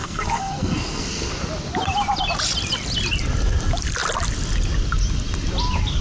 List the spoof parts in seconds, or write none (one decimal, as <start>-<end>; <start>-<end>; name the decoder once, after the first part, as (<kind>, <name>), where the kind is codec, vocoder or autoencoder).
0.0-1.3 (codec, SNAC)